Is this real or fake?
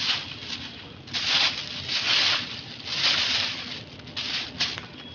real